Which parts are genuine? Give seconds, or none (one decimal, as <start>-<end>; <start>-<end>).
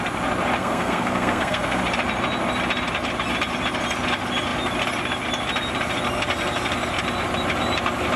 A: 0.0-0.6; 1.8-8.2